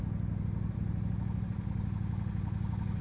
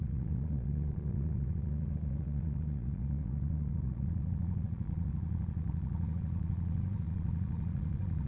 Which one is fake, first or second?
second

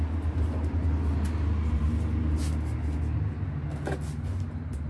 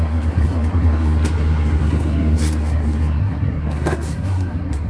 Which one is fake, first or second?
second